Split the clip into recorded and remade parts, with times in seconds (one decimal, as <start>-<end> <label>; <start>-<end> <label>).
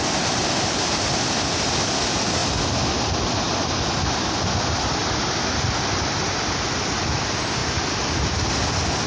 0.0-9.1 recorded